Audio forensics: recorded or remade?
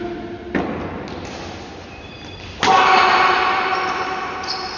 recorded